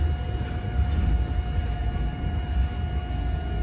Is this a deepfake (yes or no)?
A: no